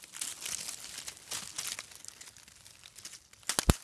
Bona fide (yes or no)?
yes